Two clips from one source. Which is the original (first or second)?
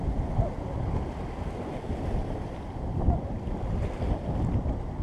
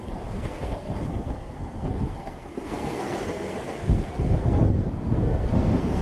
first